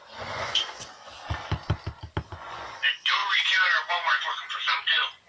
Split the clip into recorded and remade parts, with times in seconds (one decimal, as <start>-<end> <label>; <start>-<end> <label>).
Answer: 0.0-1.1 remade; 1.1-2.3 recorded; 2.3-5.3 remade